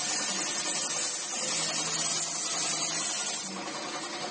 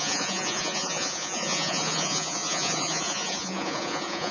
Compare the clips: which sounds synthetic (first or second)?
second